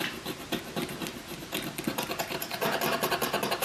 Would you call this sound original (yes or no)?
yes